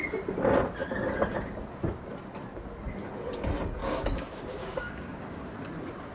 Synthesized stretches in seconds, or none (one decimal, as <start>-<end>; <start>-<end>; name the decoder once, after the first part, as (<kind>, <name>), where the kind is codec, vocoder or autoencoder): 3.8-5.4 (codec, DAC)